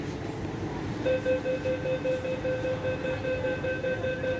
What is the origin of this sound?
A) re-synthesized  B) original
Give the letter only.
B